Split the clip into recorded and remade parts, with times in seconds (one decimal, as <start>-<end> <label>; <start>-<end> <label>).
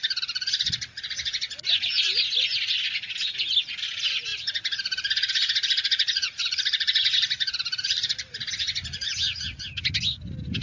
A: 0.0-4.3 recorded; 4.3-8.5 remade; 8.5-10.6 recorded